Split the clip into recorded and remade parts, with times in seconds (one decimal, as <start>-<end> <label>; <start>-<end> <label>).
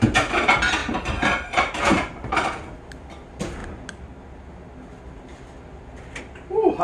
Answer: 0.0-0.8 recorded; 0.8-2.3 remade; 2.3-6.8 recorded